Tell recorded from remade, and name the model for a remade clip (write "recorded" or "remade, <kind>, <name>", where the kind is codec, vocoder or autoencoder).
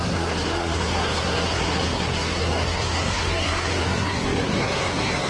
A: remade, codec, SNAC